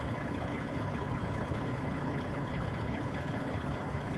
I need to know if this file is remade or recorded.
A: remade